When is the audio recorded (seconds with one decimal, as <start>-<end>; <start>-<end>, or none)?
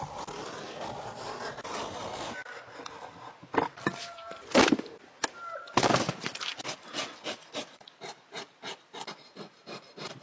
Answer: 0.0-10.2